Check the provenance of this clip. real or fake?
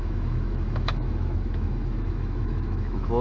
fake